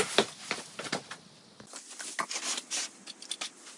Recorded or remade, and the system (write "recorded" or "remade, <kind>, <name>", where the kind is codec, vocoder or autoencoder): recorded